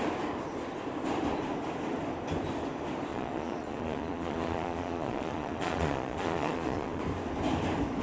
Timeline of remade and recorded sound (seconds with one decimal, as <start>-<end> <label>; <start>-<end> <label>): 0.0-3.1 recorded; 3.1-7.0 remade; 7.0-8.0 recorded